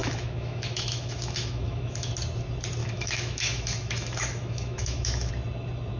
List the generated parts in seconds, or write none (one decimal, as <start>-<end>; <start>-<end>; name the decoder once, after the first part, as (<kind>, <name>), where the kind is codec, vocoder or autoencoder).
0.0-2.1 (autoencoder, DAC-VAE); 2.8-5.3